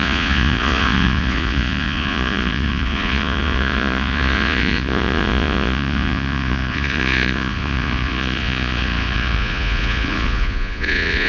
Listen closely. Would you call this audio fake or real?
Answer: fake